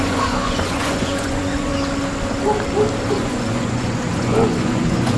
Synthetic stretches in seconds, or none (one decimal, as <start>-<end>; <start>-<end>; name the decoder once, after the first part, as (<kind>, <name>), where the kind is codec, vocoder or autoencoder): 0.0-1.7 (vocoder, Vocos); 3.1-5.2